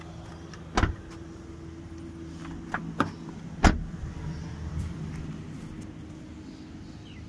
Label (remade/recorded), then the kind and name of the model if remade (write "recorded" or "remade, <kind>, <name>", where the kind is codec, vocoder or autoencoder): recorded